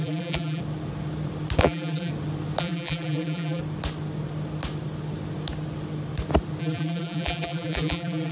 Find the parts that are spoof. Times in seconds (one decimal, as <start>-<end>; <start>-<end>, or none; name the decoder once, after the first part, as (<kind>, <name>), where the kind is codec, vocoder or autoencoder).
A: 0.0-0.6 (vocoder, BigVGAN v2); 1.6-2.1; 2.6-3.6; 6.6-8.3